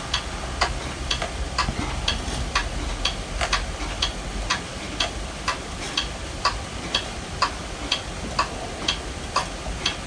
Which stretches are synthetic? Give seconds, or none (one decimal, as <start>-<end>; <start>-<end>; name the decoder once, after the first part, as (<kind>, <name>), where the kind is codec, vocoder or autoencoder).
4.5-8.0 (vocoder, BigVGAN v2)